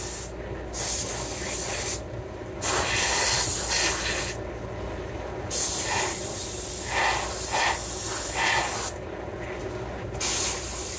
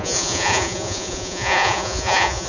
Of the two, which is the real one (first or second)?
first